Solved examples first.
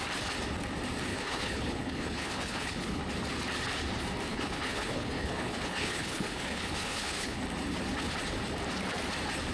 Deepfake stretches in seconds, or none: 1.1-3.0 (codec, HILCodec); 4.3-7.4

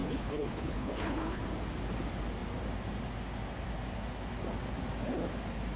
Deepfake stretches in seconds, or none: 0.0-1.4 (codec, HILCodec)

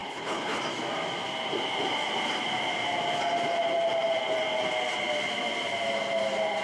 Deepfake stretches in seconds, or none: 0.0-0.6 (codec, HILCodec)

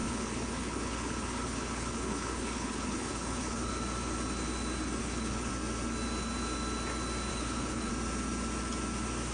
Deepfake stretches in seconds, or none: 0.0-3.7 (codec, HILCodec); 5.0-5.5; 7.3-7.9

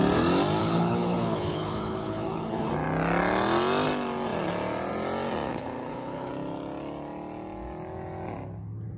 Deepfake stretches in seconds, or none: 0.6-2.7 (codec, HILCodec); 5.5-6.3

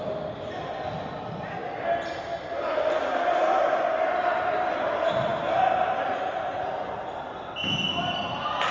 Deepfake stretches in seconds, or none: none

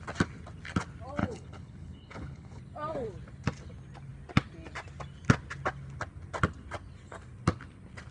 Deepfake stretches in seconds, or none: 1.2-2.6 (codec, HILCodec)

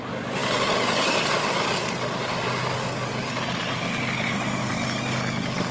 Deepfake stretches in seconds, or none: none